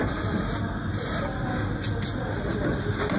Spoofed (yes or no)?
no